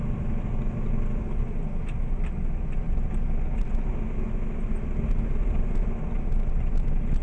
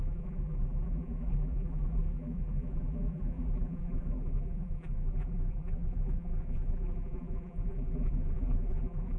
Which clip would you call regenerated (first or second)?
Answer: second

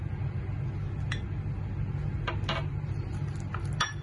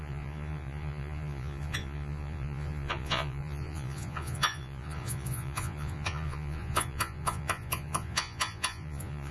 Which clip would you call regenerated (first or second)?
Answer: second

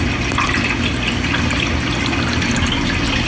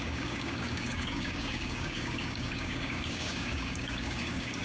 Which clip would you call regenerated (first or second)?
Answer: second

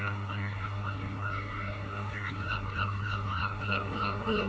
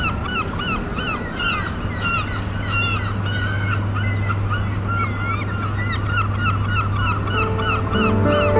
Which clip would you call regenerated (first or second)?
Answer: first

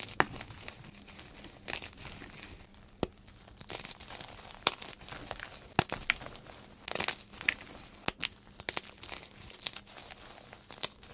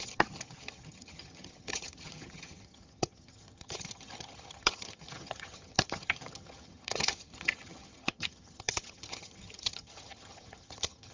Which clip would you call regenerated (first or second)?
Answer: second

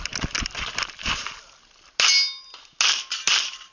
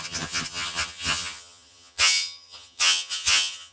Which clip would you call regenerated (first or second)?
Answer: second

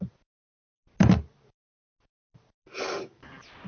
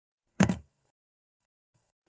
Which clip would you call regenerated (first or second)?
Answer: second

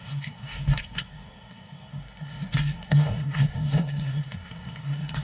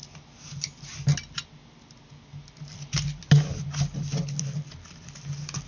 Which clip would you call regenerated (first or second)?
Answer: first